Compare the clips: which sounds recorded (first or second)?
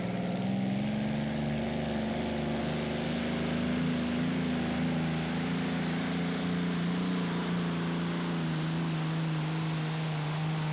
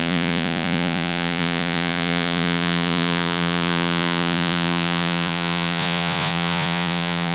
first